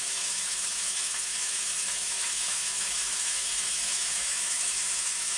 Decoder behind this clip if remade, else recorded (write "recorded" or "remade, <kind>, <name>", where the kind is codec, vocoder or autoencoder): remade, autoencoder, DAC-VAE